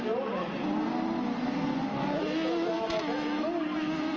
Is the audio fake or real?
real